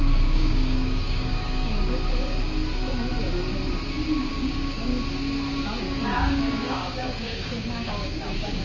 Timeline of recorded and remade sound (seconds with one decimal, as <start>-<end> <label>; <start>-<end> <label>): 0.0-1.9 remade; 1.9-4.3 recorded; 4.3-4.9 remade; 4.9-5.8 recorded; 5.8-8.6 remade